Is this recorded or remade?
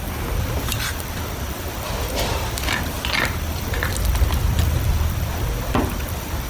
recorded